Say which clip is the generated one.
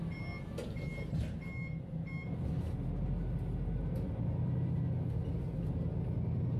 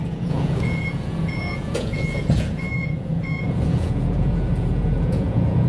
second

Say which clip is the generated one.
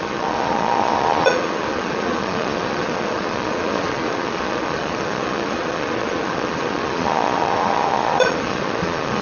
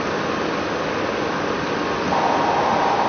first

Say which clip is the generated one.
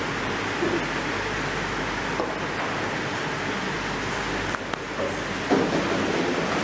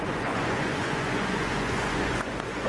second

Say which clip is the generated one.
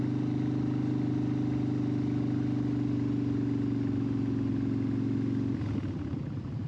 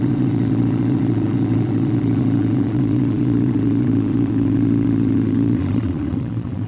second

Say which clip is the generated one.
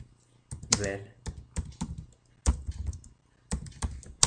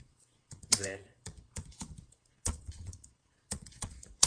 second